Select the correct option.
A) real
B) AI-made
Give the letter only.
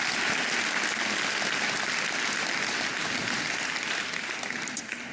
A